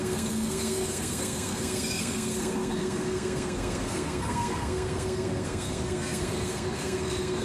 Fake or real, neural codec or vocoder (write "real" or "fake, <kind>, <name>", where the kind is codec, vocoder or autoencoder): fake, codec, SNAC